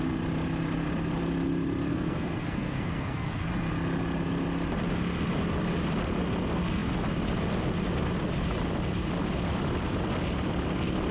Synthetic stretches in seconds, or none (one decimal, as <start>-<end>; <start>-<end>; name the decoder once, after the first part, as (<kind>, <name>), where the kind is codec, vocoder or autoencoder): 1.9-3.5 (codec, SNAC)